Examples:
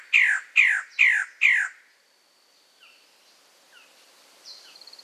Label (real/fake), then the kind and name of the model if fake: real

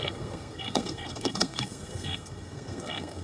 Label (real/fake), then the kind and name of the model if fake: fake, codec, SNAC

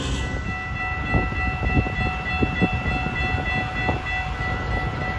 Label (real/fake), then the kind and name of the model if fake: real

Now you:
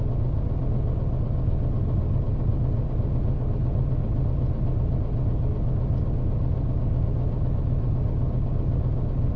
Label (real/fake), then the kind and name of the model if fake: real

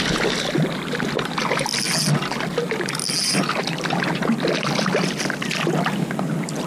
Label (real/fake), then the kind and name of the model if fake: real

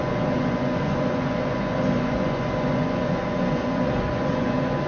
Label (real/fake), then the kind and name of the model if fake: fake, vocoder, Vocos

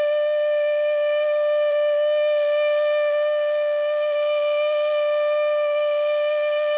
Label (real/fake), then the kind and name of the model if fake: fake, vocoder, BigVGAN v2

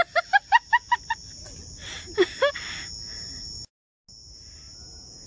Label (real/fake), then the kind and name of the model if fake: real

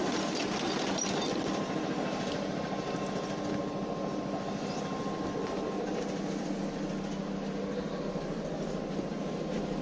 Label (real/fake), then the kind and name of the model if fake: real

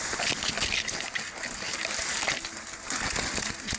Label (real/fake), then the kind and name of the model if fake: real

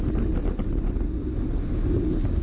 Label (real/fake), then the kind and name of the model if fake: real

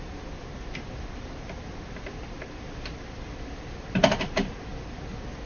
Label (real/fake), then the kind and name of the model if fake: fake, vocoder, BigVGAN v2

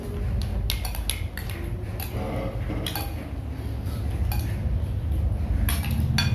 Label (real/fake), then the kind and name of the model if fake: real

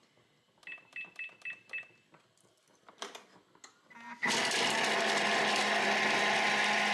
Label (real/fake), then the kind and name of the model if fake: real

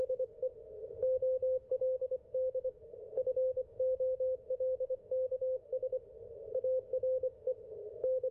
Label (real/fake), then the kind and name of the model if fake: fake, autoencoder, DAC-VAE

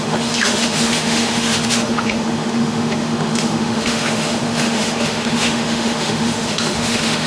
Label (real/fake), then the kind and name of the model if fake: fake, autoencoder, DAC-VAE